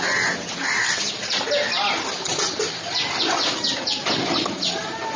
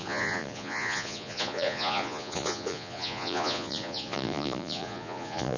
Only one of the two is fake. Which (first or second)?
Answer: second